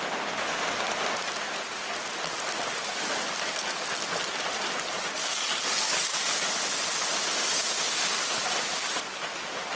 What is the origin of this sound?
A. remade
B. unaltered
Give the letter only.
B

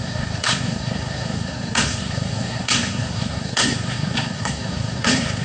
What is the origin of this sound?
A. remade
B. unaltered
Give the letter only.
A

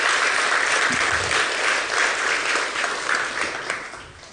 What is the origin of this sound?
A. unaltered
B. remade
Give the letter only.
A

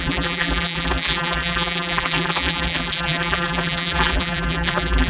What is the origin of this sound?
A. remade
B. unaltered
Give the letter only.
A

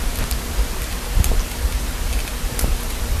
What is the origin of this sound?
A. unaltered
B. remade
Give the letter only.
A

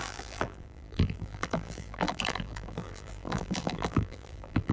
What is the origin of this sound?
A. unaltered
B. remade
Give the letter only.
B